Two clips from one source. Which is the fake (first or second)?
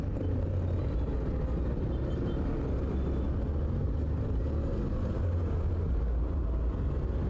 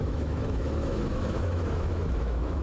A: second